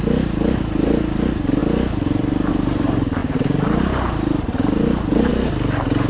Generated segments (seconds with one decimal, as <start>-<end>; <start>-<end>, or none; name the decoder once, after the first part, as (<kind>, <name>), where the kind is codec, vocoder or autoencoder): none